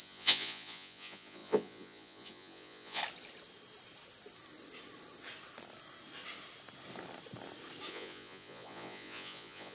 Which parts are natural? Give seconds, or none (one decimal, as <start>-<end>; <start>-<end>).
3.0-7.9